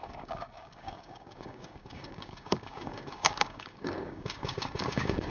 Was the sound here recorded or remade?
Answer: remade